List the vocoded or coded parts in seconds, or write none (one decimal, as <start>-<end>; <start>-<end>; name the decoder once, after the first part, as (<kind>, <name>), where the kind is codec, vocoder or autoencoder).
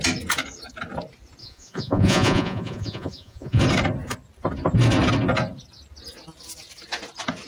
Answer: 1.4-3.6 (vocoder, Vocos)